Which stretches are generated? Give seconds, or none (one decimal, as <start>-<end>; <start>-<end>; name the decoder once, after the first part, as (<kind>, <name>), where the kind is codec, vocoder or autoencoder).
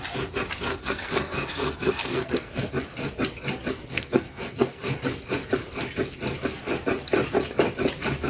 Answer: 0.7-2.7 (codec, SNAC); 3.9-4.8